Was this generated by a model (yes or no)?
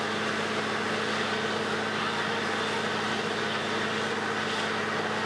no